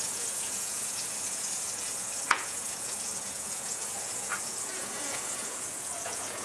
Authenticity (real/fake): fake